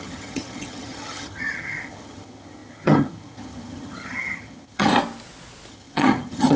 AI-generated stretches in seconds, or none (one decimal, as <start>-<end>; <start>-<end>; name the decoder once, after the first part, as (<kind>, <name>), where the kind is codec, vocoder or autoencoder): 0.0-4.9 (vocoder, HiFi-GAN); 5.7-6.6